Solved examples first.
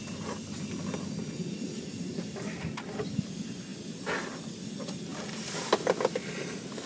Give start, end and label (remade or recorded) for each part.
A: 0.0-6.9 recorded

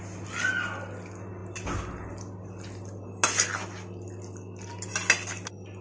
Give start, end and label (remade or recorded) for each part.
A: 0.0-5.8 recorded

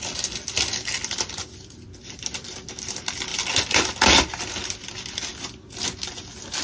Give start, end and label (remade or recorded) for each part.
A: 0.0-6.6 recorded

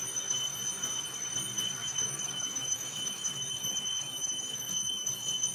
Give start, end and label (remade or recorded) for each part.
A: 0.0-1.8 recorded; 1.8-5.1 remade; 5.1-5.5 recorded

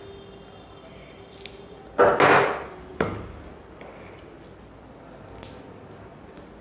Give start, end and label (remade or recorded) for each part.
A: 0.0-6.6 recorded